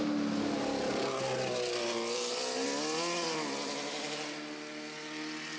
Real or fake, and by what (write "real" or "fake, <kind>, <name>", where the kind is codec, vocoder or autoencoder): real